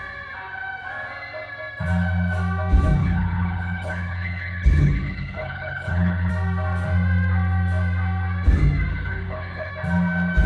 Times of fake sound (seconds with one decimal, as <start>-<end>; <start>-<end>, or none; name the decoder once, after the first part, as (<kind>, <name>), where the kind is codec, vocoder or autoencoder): 3.0-6.3 (codec, HILCodec); 8.9-9.7